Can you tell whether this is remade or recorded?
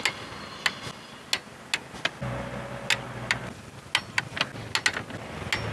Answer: recorded